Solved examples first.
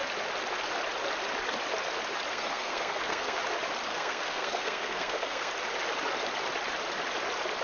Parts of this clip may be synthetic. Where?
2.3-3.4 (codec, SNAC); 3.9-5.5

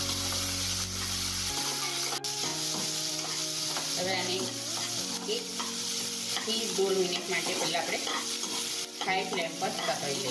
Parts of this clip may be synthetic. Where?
none

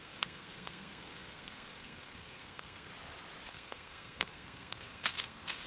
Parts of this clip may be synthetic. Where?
0.0-2.9 (codec, SNAC); 3.5-5.7

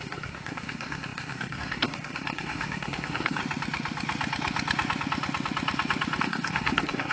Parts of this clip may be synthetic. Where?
0.0-3.4 (codec, SNAC); 6.2-7.1

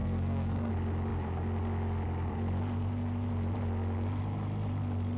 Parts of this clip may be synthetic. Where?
0.0-0.7 (codec, SNAC)

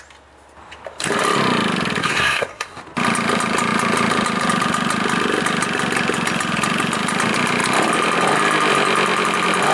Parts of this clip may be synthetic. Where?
2.0-2.8 (codec, SNAC)

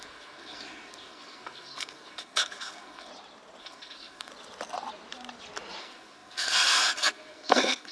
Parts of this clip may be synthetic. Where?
0.0-3.1 (codec, SNAC); 3.6-4.3; 5.8-7.9